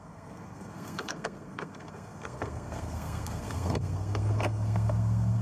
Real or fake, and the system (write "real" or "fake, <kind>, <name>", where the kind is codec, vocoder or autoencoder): fake, codec, SNAC